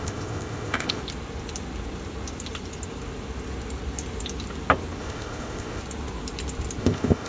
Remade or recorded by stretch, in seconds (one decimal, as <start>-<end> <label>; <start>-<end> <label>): 0.0-1.0 remade; 1.0-5.0 recorded; 5.0-5.8 remade; 5.8-6.8 recorded; 6.8-7.3 remade